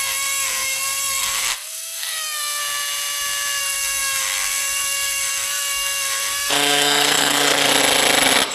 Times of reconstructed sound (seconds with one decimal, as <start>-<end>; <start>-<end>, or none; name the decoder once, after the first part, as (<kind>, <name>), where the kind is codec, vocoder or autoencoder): 0.0-2.6 (codec, SNAC); 3.6-7.7